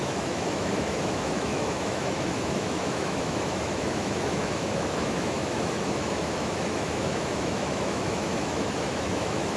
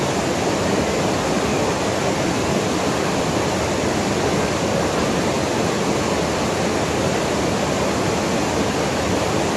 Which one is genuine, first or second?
second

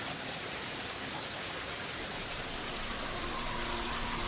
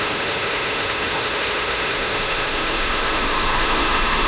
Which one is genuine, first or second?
first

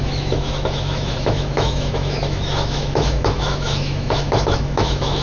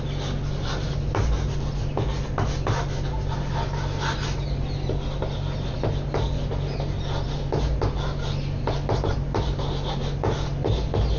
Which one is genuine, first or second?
second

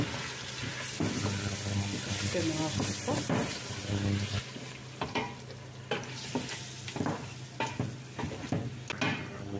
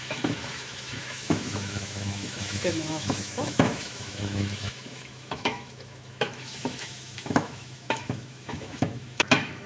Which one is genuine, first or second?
first